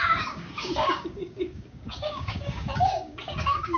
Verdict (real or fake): fake